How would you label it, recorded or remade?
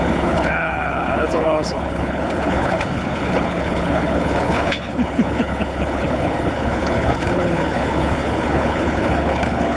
remade